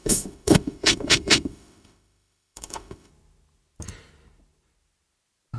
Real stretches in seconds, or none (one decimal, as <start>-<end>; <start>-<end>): 3.1-5.6